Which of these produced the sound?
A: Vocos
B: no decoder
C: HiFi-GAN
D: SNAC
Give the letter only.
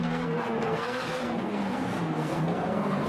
D